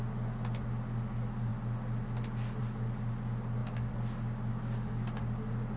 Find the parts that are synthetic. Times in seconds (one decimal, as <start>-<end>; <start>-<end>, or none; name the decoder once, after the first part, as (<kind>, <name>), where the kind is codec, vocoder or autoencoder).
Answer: none